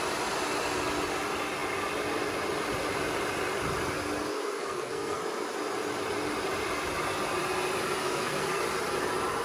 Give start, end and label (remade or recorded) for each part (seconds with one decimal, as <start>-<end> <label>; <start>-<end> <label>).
0.0-4.3 recorded; 4.3-5.2 remade; 5.2-8.0 recorded; 8.0-8.6 remade; 8.6-9.4 recorded